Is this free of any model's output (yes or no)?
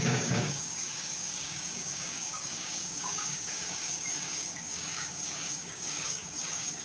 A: no